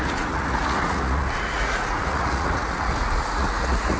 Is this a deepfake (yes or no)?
yes